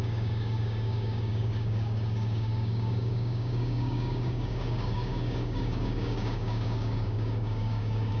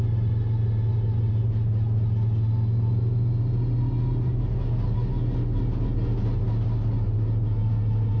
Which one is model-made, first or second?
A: first